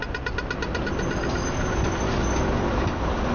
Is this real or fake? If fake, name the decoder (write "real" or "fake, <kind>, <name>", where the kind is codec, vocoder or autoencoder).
real